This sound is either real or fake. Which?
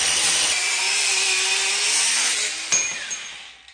real